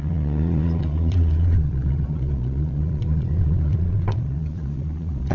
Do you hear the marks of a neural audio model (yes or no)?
yes